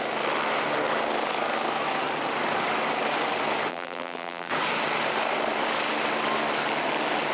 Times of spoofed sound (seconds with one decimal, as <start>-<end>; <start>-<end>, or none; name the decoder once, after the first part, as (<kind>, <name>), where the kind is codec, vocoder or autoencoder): 3.7-4.5 (vocoder, BigVGAN v2)